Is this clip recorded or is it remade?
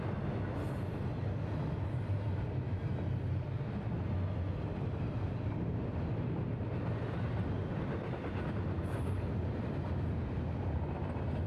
recorded